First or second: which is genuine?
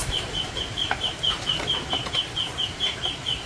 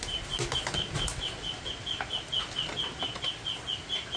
second